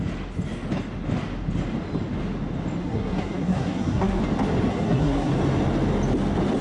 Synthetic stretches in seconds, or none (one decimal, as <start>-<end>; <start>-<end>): 2.8-4.2; 4.7-5.3